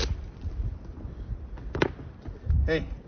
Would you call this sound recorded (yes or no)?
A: yes